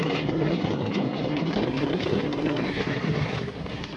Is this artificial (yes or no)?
yes